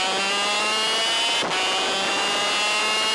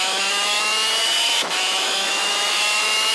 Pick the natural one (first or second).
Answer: first